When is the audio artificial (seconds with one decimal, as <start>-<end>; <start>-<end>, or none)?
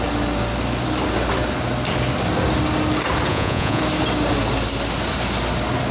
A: 3.3-3.8